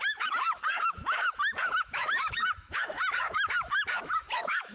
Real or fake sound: fake